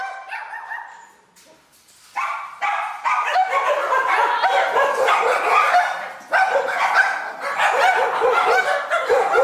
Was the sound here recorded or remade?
recorded